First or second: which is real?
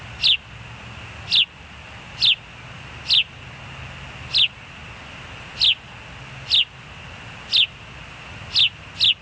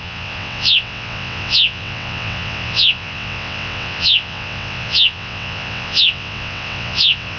first